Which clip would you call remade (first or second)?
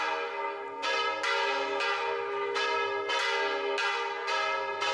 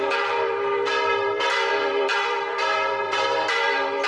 second